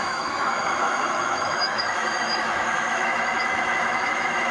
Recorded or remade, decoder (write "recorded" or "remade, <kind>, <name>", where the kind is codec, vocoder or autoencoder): remade, autoencoder, DAC-VAE